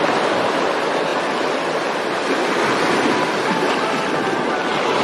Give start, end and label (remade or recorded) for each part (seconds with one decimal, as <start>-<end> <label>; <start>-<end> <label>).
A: 0.0-5.0 recorded